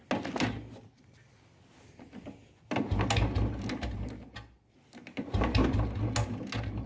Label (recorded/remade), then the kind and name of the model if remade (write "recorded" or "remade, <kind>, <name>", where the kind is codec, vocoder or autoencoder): recorded